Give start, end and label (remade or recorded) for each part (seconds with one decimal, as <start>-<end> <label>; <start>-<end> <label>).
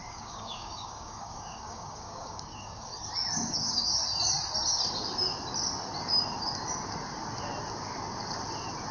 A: 0.0-2.9 remade; 2.9-3.5 recorded; 3.5-3.9 remade; 3.9-8.9 recorded